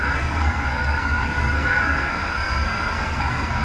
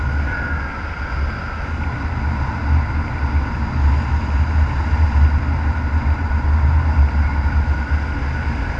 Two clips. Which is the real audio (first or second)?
second